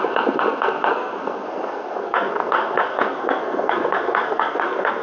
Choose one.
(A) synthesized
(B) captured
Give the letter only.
A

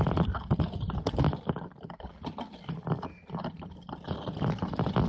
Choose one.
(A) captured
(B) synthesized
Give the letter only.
A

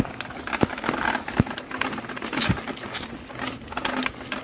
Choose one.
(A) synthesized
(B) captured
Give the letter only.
B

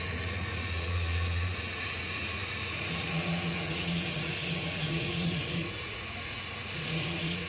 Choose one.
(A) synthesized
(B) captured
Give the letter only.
A